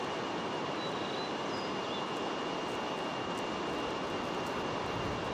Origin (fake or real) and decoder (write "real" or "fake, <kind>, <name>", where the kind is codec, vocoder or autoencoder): real